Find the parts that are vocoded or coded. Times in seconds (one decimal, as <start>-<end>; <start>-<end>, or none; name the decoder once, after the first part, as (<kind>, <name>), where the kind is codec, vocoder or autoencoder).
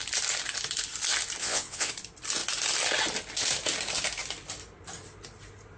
1.4-1.9 (vocoder, WaveNeXt)